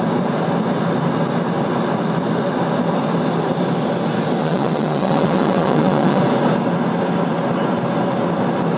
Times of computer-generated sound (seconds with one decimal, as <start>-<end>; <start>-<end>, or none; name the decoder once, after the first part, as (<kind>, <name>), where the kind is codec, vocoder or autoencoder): 4.4-6.2 (vocoder, WaveNeXt)